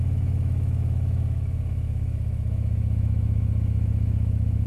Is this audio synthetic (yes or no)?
yes